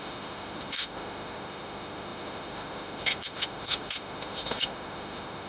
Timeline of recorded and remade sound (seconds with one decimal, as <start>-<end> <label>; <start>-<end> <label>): 0.0-5.5 remade